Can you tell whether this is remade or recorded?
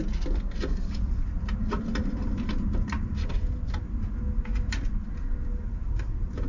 recorded